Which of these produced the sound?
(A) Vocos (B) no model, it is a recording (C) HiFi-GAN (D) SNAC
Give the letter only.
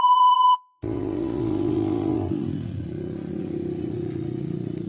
A